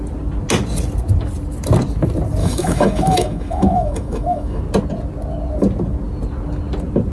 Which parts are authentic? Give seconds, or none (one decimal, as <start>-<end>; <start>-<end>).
0.0-2.4; 4.6-7.1